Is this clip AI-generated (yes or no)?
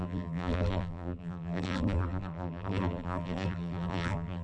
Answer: yes